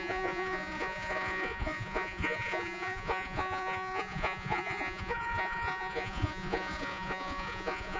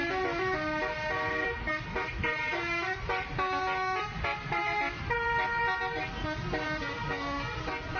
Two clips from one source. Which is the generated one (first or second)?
first